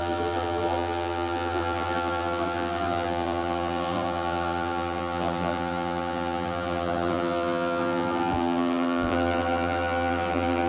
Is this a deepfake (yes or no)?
yes